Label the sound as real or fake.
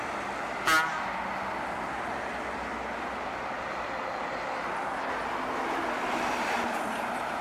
real